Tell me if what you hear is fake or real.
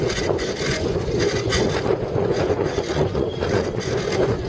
fake